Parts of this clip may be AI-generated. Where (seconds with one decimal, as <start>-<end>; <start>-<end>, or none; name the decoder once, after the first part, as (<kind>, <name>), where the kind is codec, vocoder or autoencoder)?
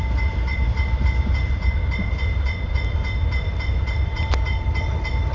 none